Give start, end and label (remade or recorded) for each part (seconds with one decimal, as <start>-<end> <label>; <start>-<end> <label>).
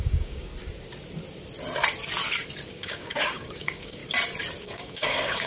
0.0-0.5 remade; 0.5-2.7 recorded; 2.7-4.0 remade; 4.0-4.6 recorded; 4.6-5.5 remade